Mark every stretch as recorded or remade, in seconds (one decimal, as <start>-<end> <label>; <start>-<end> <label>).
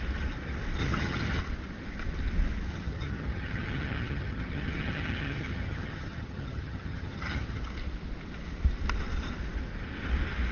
0.0-0.8 recorded; 0.8-1.4 remade; 1.4-2.7 recorded; 2.7-7.6 remade; 7.6-10.5 recorded